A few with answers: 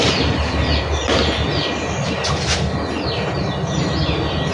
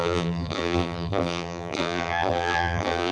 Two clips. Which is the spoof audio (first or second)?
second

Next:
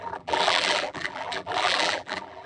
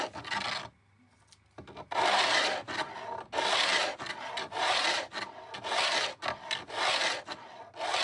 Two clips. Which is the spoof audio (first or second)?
first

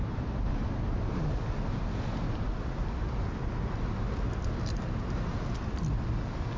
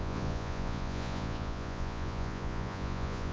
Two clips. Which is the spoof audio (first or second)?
second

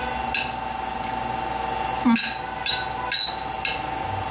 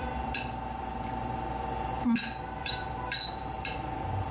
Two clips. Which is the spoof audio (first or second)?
second